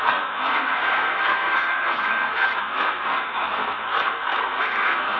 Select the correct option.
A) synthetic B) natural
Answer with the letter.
A